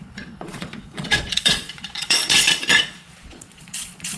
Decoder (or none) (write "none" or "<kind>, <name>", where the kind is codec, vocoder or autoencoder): vocoder, Vocos